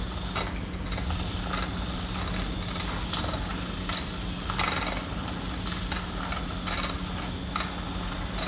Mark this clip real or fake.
real